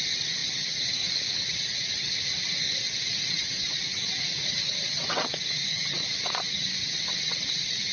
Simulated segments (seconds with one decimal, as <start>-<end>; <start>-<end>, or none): 0.0-7.9